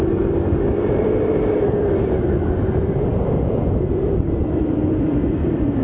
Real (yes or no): yes